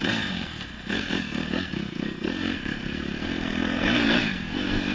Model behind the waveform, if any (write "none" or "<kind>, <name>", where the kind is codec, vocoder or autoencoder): codec, SNAC